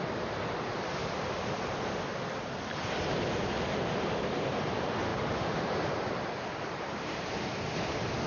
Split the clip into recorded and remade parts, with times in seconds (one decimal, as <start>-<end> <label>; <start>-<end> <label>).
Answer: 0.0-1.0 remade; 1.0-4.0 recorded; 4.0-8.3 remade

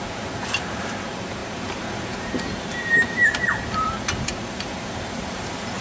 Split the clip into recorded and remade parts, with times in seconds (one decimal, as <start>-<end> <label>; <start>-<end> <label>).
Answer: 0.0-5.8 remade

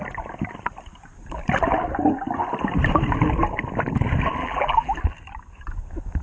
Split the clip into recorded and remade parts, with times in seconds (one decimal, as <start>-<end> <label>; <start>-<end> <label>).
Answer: 0.0-4.4 recorded; 4.4-4.9 remade; 4.9-6.2 recorded